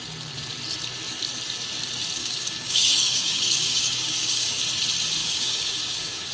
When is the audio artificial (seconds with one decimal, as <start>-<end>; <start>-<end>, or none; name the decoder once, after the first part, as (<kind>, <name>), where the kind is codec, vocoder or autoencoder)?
2.2-4.6 (codec, DAC); 5.2-6.3